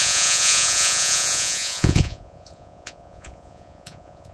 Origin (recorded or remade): remade